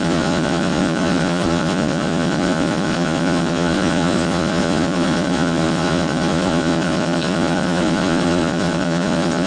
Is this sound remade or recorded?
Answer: remade